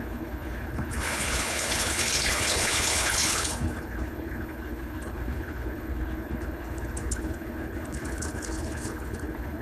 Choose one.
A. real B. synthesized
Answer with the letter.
B